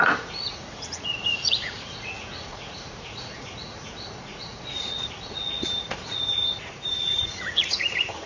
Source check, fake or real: fake